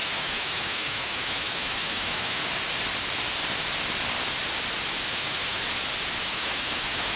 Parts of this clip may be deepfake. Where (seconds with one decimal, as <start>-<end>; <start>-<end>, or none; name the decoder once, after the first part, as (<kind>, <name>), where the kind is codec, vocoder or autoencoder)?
0.0-2.4 (autoencoder, DAC-VAE); 5.1-5.6; 6.2-7.2